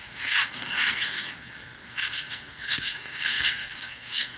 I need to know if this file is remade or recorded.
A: remade